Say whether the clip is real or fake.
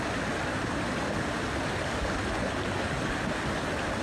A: real